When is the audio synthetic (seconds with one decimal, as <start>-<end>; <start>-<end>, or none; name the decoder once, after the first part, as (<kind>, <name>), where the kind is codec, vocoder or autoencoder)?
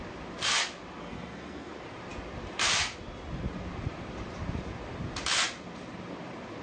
1.0-1.7 (codec, SNAC)